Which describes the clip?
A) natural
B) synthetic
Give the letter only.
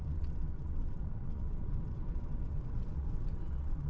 B